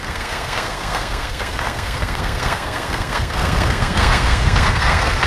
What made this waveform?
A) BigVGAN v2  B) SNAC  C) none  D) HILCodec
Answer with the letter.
B